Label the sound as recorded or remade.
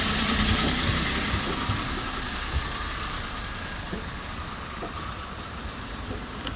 remade